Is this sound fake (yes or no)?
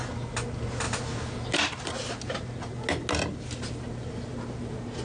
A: no